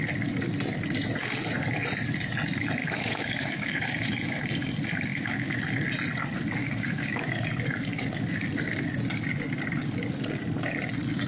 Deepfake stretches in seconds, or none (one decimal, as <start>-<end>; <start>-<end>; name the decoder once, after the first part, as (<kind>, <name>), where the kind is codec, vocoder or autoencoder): 2.8-4.4 (autoencoder, DAC-VAE); 5.1-5.6; 6.6-7.3